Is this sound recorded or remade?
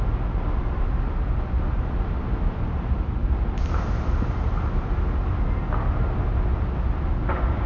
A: recorded